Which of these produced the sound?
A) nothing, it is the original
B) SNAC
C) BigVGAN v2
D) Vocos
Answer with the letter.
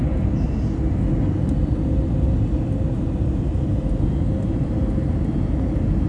A